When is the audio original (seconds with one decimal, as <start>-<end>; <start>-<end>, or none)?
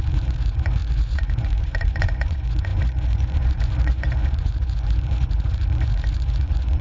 none